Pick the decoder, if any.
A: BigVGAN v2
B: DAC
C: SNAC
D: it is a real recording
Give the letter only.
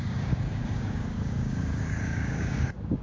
B